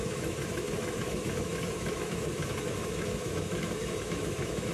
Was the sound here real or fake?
fake